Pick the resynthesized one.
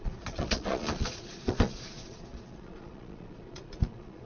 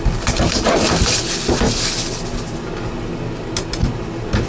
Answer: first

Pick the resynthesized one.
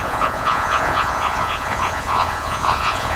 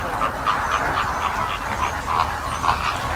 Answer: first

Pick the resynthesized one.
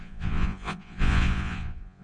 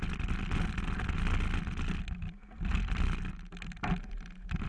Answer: first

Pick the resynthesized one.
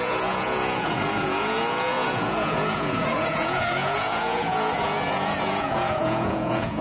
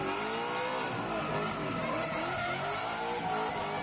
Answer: first